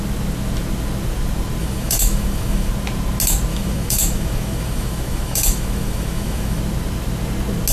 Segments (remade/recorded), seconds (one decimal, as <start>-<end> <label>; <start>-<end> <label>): 0.0-1.6 recorded; 1.6-2.7 remade; 2.7-3.5 recorded; 3.5-6.6 remade; 6.6-7.7 recorded